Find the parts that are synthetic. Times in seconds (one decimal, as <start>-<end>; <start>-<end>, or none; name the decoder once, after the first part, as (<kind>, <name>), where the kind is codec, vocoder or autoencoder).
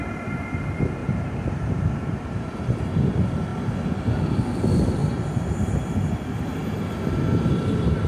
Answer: 1.0-2.9 (vocoder, BigVGAN v2); 5.0-5.9